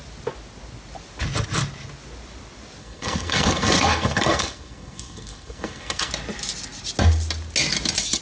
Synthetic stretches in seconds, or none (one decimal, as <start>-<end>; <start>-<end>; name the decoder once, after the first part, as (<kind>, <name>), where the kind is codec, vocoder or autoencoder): 2.8-6.1 (codec, SNAC)